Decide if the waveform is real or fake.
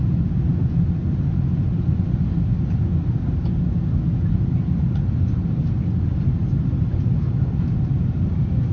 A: real